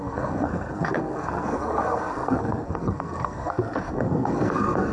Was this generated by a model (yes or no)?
yes